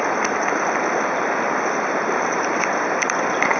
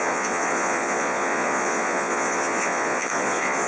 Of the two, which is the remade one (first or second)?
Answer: second